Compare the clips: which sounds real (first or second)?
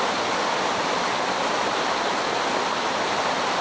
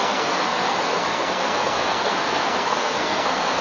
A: first